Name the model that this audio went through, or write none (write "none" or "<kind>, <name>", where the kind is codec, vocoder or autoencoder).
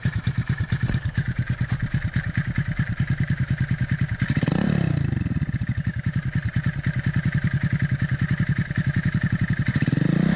none